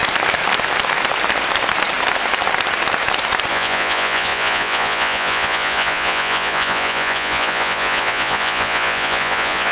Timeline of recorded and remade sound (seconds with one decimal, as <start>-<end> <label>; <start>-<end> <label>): 0.0-3.5 recorded; 3.5-9.7 remade